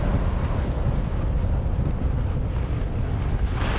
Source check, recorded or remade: recorded